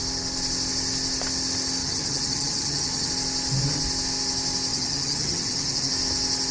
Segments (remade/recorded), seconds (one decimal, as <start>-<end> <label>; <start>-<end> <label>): 0.0-1.8 recorded; 1.8-3.1 remade; 3.1-4.7 recorded; 4.7-5.9 remade; 5.9-6.5 recorded